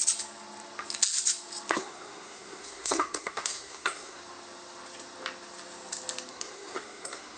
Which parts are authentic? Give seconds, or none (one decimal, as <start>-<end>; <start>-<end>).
0.0-1.7; 4.2-6.3